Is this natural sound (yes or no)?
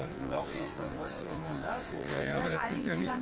no